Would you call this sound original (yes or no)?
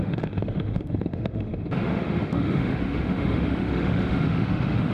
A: no